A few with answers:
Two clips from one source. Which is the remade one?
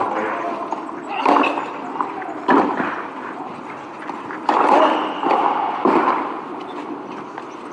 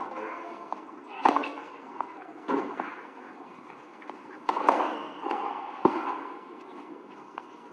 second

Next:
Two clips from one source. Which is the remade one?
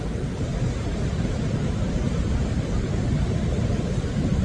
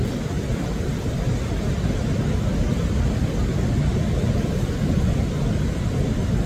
first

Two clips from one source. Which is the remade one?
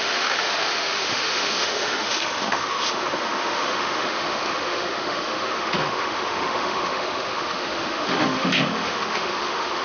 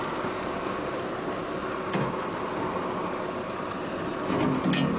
first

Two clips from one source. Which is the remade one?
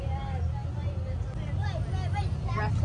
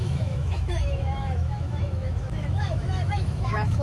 second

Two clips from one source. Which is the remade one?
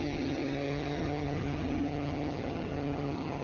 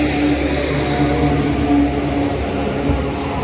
first